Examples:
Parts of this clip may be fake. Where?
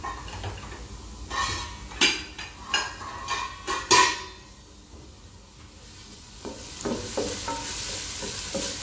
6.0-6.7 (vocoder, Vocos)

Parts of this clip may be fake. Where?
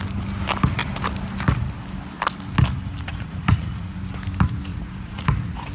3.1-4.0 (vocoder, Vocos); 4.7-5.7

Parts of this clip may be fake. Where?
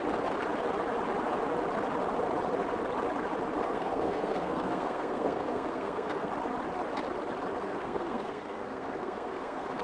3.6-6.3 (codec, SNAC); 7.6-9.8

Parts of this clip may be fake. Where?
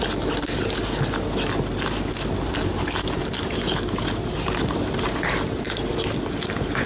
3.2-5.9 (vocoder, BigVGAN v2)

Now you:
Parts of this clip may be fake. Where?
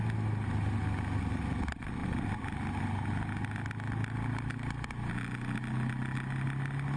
none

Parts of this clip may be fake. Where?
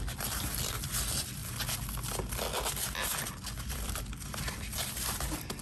0.0-1.4 (vocoder, BigVGAN v2); 3.7-5.6